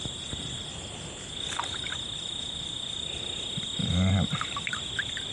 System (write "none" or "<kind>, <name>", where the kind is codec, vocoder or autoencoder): none